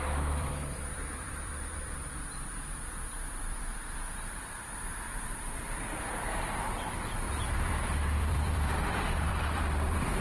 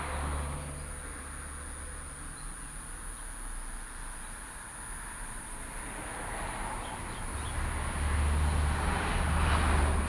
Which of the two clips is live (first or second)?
second